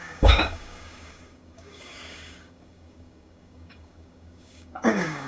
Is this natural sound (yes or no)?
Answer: no